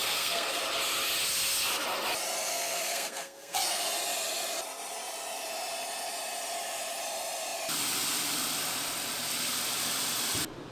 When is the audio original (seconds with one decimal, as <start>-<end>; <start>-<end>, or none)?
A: 0.6-2.5; 3.8-10.7